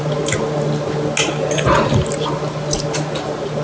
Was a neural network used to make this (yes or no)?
no